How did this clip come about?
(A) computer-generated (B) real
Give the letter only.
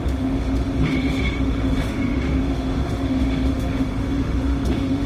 A